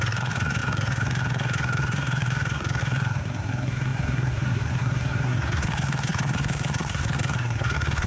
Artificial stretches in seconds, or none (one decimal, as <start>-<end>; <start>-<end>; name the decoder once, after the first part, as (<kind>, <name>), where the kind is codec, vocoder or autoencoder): 0.0-8.1 (codec, SNAC)